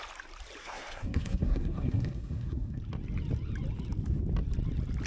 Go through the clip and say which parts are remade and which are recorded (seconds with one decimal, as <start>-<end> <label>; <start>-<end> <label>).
0.0-0.6 recorded; 0.6-2.8 remade; 2.8-5.1 recorded